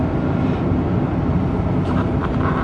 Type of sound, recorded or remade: remade